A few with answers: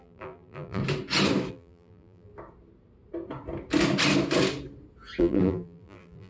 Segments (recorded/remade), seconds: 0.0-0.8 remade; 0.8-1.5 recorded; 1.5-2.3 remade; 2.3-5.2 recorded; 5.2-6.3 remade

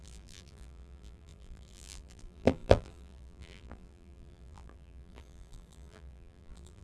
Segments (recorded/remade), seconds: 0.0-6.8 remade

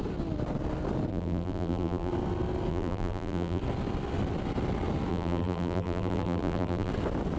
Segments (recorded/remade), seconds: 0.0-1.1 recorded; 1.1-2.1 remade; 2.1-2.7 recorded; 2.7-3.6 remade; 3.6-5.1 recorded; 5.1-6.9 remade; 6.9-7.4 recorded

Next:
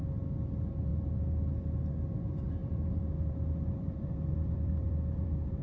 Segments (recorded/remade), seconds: 0.0-2.6 recorded; 2.6-5.6 remade

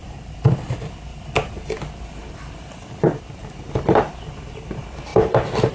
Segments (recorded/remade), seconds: 0.0-1.1 remade; 1.1-2.3 recorded; 2.3-5.7 remade

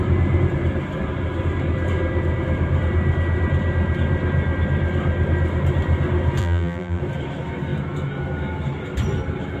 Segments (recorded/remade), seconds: 0.0-6.4 recorded; 6.4-7.0 remade; 7.0-9.6 recorded